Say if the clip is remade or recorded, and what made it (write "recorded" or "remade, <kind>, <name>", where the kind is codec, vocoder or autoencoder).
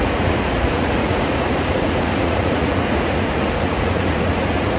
remade, vocoder, Vocos